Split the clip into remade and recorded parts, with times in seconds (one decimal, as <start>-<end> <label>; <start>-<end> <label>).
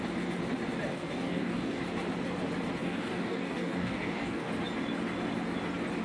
0.0-0.9 recorded; 0.9-1.8 remade; 1.8-2.8 recorded; 2.8-4.5 remade; 4.5-6.0 recorded